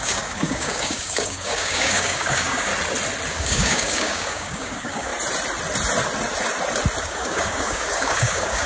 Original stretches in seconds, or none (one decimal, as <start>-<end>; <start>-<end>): 2.7-3.3; 5.1-7.0